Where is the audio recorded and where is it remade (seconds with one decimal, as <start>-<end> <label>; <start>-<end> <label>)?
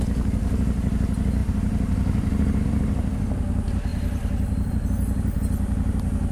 0.0-1.4 recorded; 1.4-2.6 remade; 2.6-3.9 recorded; 3.9-4.7 remade; 4.7-6.3 recorded